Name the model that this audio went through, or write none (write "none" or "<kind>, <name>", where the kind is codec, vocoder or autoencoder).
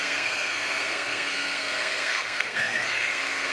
codec, SNAC